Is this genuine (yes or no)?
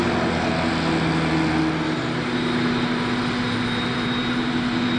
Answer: yes